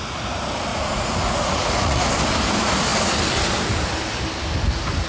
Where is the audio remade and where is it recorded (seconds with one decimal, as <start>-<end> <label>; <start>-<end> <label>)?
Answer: 0.0-0.7 recorded; 0.7-2.1 remade; 2.1-5.1 recorded